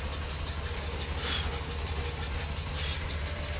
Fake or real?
real